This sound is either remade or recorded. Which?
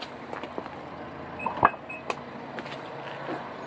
recorded